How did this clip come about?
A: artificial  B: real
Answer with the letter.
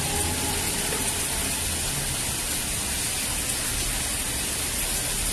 B